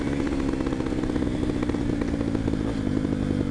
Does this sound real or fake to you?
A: real